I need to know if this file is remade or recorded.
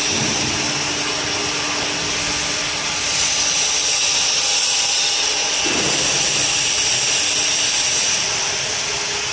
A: recorded